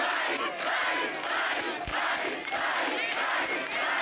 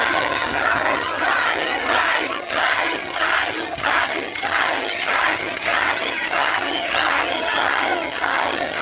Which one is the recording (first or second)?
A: first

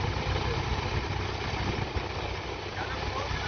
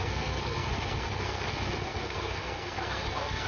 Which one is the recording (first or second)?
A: first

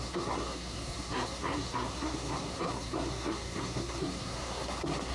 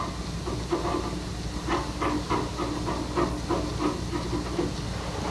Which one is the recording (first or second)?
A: second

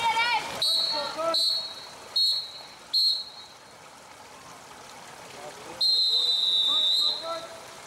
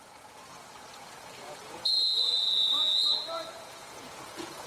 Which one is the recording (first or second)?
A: first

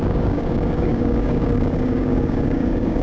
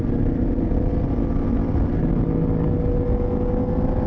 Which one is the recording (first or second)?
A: second